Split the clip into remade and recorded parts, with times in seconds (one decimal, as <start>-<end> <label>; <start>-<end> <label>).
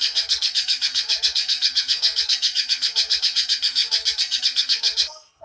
0.0-5.4 remade